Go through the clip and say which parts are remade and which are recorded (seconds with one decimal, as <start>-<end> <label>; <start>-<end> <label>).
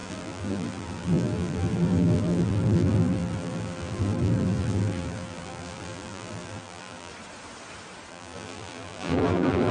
0.0-7.1 remade; 7.1-8.1 recorded; 8.1-9.7 remade